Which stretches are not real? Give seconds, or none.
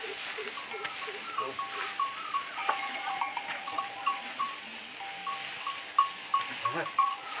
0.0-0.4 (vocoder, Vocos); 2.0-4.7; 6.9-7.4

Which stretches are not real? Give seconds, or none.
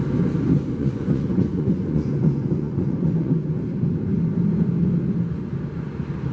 0.8-3.5 (vocoder, Vocos)